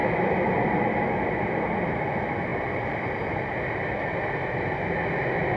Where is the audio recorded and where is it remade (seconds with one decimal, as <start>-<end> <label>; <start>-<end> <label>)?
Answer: 0.0-2.5 recorded; 2.5-3.4 remade; 3.4-5.6 recorded

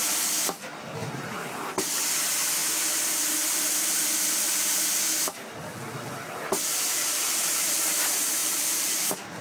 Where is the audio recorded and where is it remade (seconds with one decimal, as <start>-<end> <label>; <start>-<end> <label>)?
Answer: 0.0-1.0 recorded; 1.0-1.6 remade; 1.6-8.4 recorded; 8.4-9.4 remade

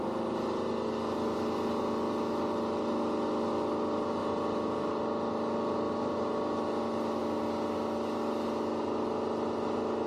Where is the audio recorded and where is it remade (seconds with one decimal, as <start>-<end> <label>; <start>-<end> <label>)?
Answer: 0.0-10.1 recorded

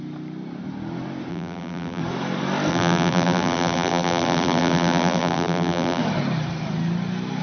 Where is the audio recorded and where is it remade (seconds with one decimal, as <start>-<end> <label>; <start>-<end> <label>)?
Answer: 0.0-1.3 recorded; 1.3-2.0 remade; 2.0-2.7 recorded; 2.7-6.0 remade; 6.0-7.4 recorded